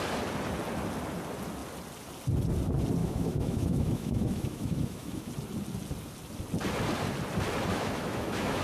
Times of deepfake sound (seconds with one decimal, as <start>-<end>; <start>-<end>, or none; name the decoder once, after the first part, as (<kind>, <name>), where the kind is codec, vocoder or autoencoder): 3.0-5.3 (autoencoder, DAC-VAE); 7.7-8.6